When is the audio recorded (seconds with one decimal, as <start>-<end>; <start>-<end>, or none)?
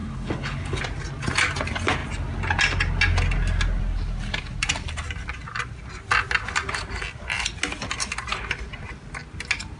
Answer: 0.8-9.8